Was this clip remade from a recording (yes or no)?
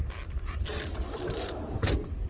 no